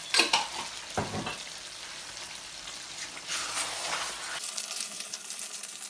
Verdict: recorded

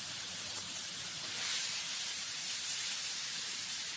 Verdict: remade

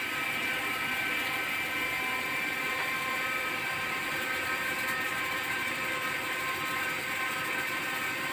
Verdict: recorded